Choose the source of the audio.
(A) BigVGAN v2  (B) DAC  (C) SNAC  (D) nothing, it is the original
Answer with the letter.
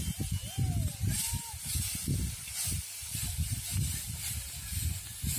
D